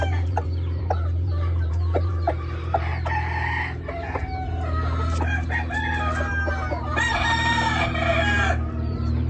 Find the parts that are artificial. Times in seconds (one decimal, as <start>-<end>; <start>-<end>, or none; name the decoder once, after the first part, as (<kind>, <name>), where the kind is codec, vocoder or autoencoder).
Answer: 0.0-2.9 (vocoder, BigVGAN v2); 7.1-9.3